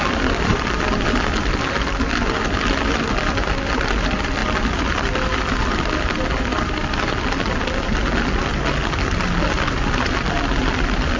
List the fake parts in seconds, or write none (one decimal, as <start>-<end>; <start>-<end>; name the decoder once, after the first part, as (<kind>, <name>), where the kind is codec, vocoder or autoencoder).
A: none